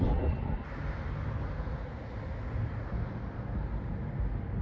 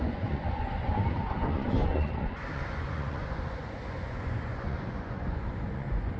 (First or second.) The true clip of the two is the first